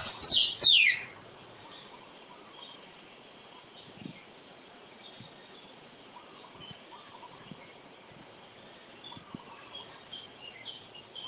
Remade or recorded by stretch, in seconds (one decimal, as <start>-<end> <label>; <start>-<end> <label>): 0.0-11.3 remade